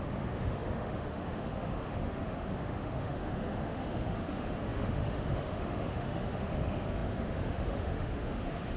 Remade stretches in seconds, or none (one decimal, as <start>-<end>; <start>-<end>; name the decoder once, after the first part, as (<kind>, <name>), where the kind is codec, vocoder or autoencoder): 0.0-8.8 (autoencoder, DAC-VAE)